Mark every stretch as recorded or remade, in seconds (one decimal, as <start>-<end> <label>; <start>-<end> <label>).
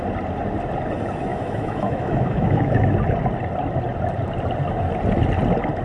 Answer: 0.0-1.3 recorded; 1.3-2.9 remade; 2.9-5.8 recorded